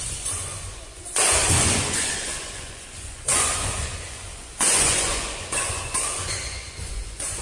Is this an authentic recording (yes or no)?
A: no